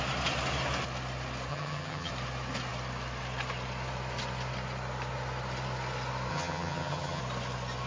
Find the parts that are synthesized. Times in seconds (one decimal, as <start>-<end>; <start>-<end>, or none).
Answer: 1.5-2.1; 6.3-7.2